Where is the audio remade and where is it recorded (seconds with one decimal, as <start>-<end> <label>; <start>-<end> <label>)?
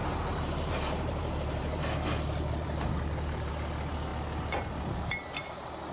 0.0-3.5 remade; 3.5-5.9 recorded